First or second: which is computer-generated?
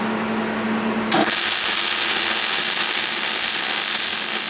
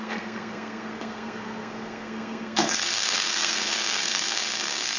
second